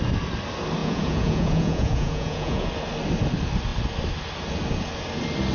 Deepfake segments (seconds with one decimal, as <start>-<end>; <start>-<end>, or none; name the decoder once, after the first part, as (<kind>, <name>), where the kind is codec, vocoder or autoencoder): 0.8-2.7 (vocoder, Vocos)